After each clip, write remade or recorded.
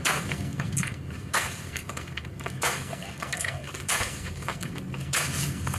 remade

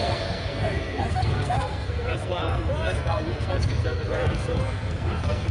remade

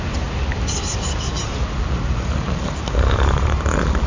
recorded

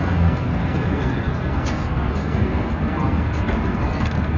remade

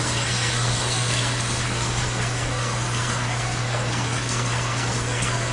remade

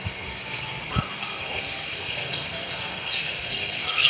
remade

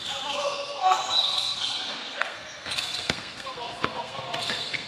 remade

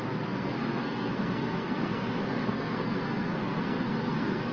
remade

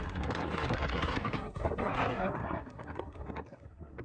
remade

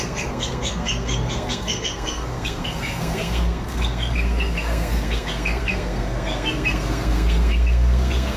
remade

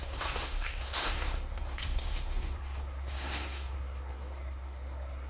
remade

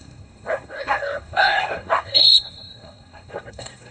remade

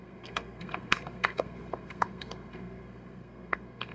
remade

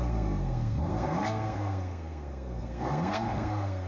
remade